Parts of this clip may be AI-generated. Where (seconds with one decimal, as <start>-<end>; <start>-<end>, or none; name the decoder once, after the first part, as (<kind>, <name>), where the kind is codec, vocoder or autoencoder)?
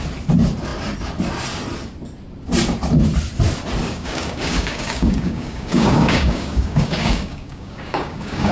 3.8-8.5 (codec, DAC)